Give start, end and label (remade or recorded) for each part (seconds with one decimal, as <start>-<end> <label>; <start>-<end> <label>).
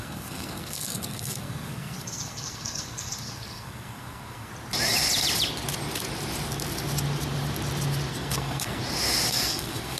0.0-4.5 remade; 4.5-8.1 recorded; 8.1-8.8 remade; 8.8-9.3 recorded; 9.3-10.0 remade